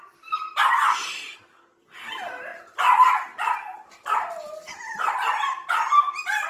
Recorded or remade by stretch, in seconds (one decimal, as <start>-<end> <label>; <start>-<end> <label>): 0.0-6.5 recorded